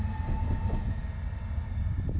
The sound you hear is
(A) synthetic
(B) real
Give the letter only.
B